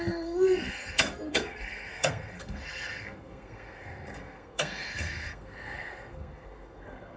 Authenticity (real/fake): fake